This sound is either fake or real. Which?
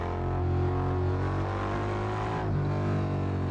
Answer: real